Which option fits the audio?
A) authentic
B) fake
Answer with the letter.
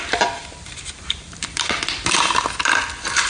B